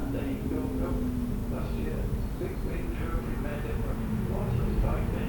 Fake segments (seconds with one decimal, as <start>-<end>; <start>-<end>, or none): 3.5-5.3

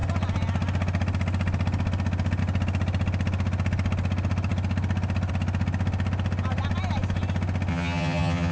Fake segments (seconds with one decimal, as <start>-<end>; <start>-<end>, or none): 7.7-8.5